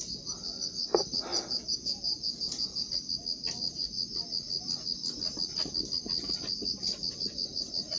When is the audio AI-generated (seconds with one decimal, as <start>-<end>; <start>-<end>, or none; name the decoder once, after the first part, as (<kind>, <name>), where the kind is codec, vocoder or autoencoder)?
1.3-2.9 (vocoder, Vocos)